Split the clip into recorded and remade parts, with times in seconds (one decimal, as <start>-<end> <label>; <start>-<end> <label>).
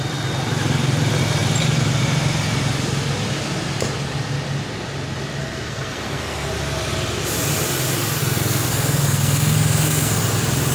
0.0-5.4 recorded; 5.4-6.5 remade; 6.5-8.2 recorded; 8.2-10.2 remade; 10.2-10.7 recorded